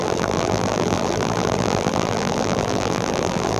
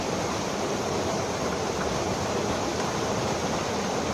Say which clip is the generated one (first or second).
first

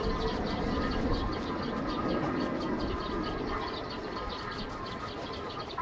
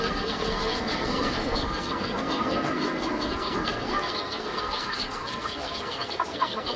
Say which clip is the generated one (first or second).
second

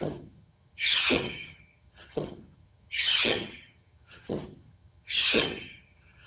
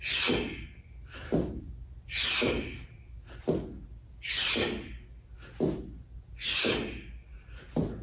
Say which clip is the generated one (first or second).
first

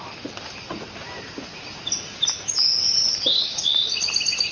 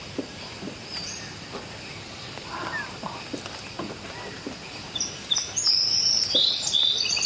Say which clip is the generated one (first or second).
second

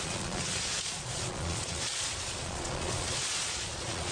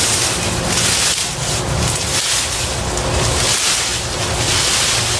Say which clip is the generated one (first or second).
first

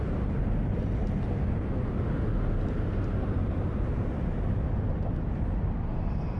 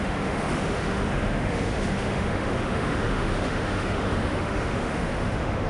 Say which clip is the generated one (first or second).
second